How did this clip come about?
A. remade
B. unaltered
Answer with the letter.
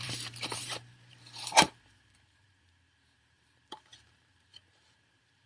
A